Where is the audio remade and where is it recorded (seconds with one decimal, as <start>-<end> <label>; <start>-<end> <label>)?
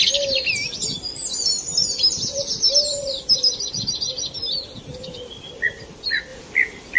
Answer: 0.0-6.3 recorded; 6.3-7.0 remade